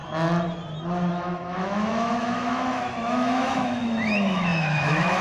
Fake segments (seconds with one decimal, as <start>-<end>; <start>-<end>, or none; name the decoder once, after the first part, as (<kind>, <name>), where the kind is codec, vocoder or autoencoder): 1.1-5.2 (autoencoder, DAC-VAE)